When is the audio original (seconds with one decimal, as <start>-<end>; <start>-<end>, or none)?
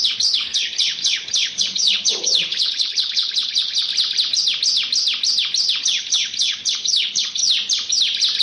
3.9-5.8; 7.4-8.4